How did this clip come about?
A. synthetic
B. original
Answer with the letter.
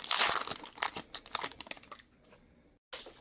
B